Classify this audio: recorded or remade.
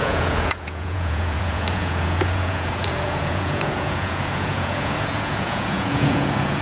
remade